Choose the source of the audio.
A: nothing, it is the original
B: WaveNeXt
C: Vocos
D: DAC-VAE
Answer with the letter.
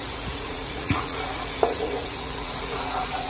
C